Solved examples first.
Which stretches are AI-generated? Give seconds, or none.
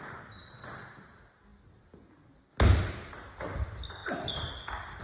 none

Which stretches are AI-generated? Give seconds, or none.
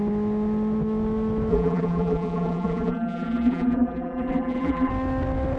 1.5-4.9 (vocoder, BigVGAN v2)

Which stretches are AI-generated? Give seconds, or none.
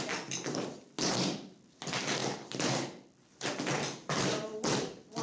none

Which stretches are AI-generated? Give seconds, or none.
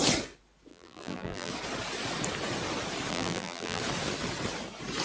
0.7-1.5 (vocoder, BigVGAN v2); 3.1-3.8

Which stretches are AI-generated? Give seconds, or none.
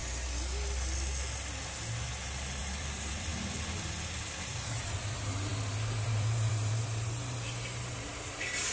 2.6-3.3 (vocoder, BigVGAN v2); 4.4-8.7